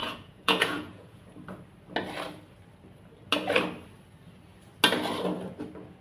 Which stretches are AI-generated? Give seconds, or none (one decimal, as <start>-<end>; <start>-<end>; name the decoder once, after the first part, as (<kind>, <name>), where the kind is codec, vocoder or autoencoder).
0.0-1.3 (vocoder, Vocos)